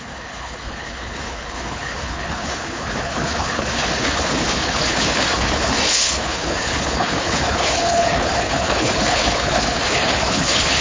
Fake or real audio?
fake